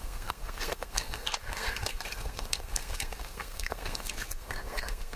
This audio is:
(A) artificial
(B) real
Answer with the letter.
A